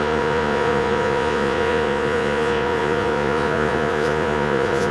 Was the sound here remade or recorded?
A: remade